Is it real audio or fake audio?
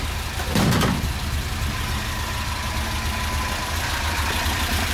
real